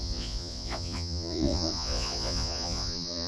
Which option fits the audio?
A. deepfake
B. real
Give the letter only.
A